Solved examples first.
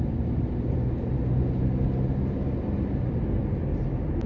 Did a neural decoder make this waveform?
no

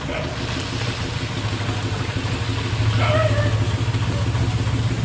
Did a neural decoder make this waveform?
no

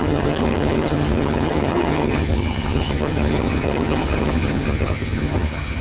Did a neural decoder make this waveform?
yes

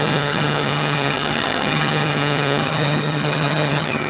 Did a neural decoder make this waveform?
yes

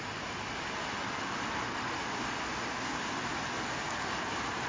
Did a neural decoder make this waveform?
no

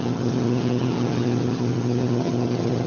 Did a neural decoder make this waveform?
yes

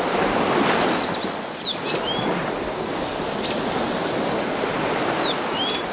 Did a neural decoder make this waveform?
no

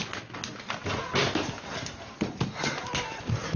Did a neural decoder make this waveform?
no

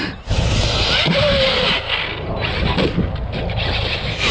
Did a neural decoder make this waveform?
no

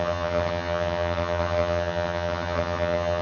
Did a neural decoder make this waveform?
yes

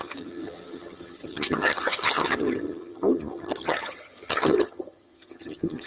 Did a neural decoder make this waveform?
yes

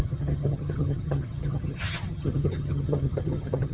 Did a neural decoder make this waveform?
yes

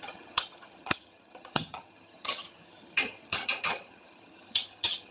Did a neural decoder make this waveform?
yes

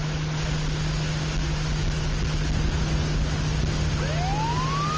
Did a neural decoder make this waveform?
no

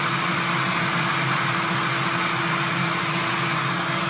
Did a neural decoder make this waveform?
no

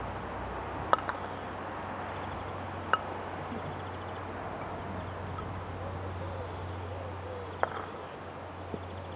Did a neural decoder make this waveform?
no